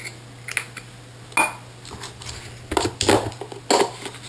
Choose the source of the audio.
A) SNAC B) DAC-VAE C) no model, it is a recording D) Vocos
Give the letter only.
C